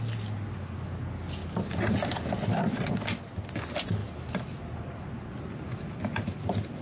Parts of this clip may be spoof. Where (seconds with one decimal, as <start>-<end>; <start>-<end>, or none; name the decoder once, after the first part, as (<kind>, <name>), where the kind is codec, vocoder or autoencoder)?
none